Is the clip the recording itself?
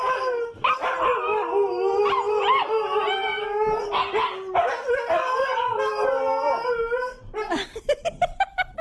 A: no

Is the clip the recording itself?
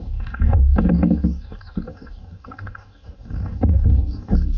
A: no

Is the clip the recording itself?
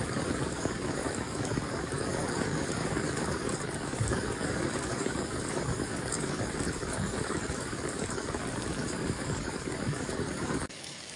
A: no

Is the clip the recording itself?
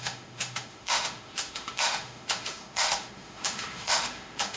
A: no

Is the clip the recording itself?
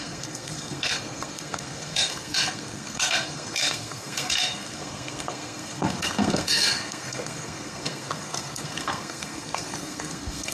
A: no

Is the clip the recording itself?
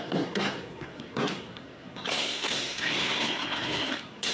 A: no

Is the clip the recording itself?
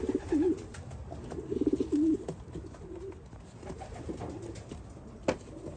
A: yes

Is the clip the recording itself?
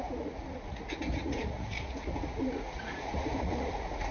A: no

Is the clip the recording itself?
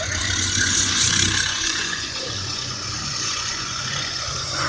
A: no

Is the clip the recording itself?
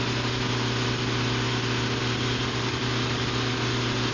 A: yes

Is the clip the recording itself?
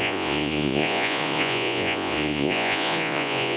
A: no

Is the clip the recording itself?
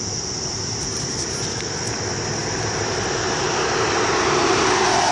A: yes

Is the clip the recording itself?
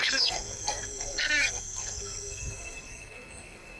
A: no